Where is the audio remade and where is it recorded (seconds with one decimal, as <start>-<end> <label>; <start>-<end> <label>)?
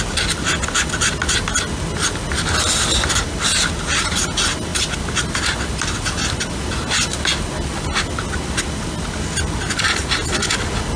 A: 0.0-11.0 recorded